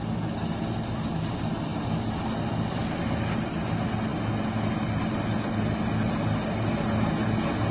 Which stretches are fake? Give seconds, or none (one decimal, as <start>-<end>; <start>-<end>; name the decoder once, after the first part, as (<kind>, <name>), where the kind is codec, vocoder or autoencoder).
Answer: none